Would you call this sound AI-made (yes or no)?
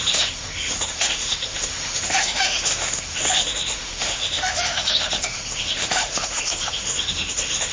yes